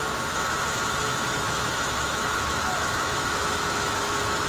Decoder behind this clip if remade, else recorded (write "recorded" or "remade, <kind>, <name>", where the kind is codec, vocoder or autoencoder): remade, autoencoder, DAC-VAE